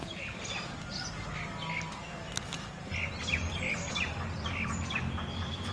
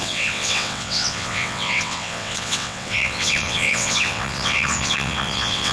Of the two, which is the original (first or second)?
first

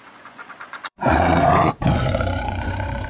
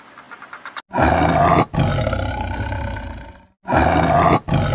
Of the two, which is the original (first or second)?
second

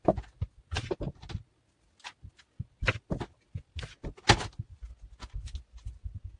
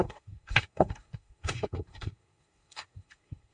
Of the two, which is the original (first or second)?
first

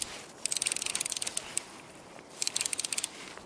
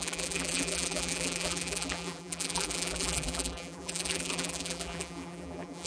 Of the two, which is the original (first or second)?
first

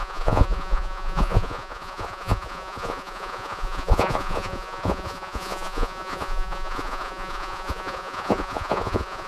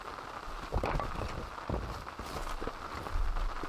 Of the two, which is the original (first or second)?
second